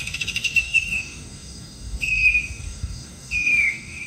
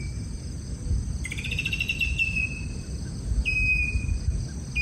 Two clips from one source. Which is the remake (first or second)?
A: first